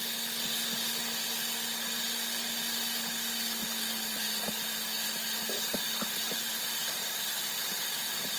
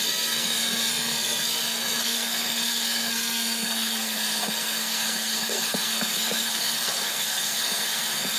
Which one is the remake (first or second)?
second